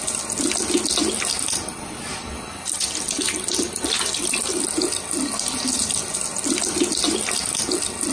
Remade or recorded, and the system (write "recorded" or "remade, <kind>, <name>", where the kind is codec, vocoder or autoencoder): recorded